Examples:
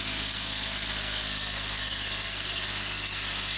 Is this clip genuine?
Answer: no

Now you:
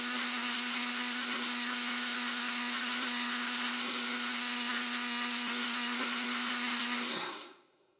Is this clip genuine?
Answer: no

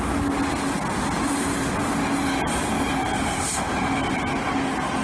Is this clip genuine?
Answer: yes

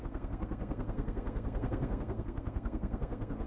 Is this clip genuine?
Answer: no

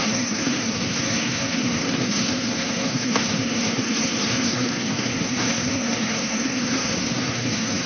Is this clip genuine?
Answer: no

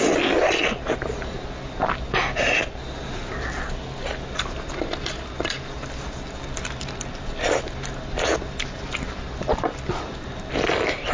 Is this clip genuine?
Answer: yes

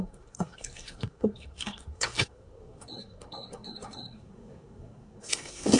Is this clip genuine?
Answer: no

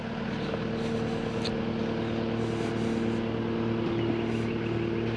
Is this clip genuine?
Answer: yes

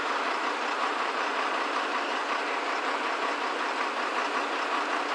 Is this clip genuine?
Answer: yes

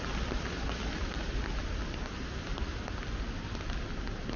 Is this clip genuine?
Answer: yes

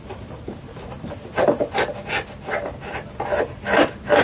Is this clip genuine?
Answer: yes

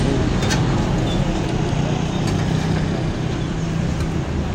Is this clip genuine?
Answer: yes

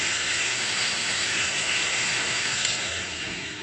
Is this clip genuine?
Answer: no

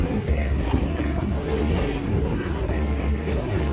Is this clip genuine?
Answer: no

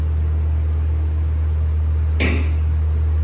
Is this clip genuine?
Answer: yes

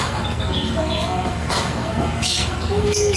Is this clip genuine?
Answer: no